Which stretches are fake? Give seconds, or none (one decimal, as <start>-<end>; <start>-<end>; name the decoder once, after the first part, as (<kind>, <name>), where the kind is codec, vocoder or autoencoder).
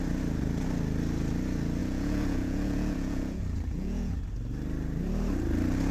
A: 1.8-4.2 (vocoder, Vocos)